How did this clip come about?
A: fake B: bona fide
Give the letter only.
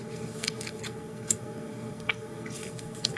A